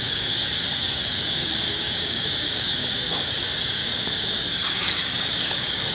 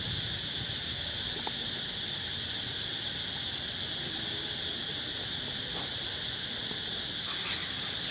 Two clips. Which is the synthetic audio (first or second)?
first